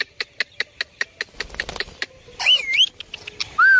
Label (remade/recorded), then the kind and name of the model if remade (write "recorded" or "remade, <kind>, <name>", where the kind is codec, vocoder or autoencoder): recorded